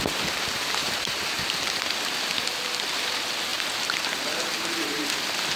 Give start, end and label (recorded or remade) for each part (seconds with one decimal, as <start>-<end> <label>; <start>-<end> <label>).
0.0-0.8 recorded; 0.8-1.8 remade; 1.8-5.6 recorded